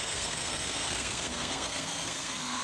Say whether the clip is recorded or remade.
remade